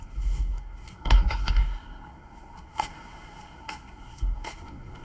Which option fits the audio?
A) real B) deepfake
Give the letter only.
B